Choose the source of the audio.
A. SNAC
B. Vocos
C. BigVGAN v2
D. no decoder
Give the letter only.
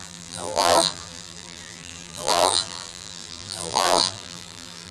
C